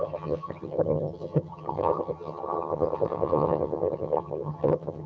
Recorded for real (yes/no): no